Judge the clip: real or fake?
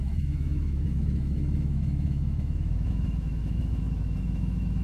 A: fake